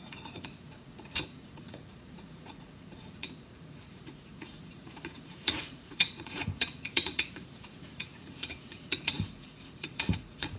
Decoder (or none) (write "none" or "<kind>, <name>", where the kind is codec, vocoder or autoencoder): vocoder, Vocos